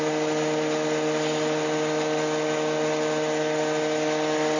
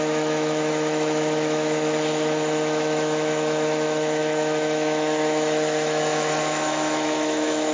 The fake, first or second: second